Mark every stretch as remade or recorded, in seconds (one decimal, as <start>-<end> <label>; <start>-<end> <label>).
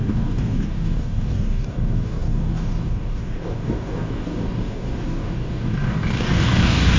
0.0-7.0 remade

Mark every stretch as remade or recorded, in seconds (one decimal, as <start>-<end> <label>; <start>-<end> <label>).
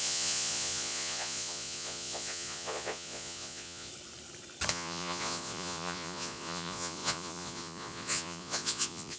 0.0-3.9 remade; 3.9-4.7 recorded; 4.7-9.2 remade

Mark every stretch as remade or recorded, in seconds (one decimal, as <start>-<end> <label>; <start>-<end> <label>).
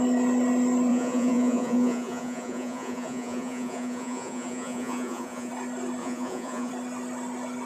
0.0-0.9 recorded; 0.9-5.5 remade; 5.5-6.0 recorded; 6.0-6.7 remade; 6.7-7.7 recorded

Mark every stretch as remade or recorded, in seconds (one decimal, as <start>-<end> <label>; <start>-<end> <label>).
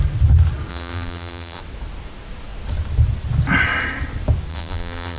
0.0-0.7 recorded; 0.7-1.6 remade; 1.6-4.5 recorded; 4.5-5.2 remade